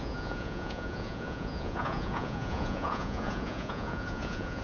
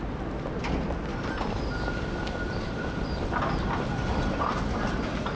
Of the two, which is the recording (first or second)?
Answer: second